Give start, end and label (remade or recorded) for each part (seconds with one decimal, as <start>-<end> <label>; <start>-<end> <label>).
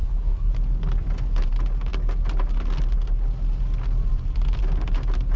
0.0-0.5 remade; 0.5-5.4 recorded